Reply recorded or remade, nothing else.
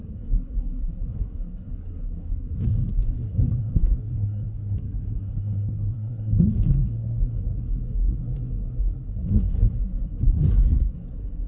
remade